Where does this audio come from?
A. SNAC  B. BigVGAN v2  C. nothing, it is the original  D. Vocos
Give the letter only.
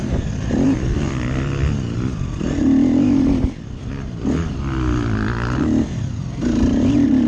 C